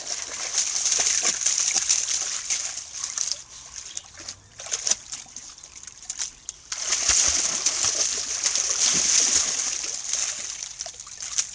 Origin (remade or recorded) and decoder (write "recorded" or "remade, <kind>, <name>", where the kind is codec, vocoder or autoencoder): recorded